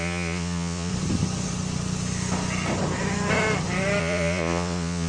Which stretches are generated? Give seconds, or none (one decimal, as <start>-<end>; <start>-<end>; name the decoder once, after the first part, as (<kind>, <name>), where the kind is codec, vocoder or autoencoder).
0.0-0.9 (vocoder, Vocos); 4.0-5.1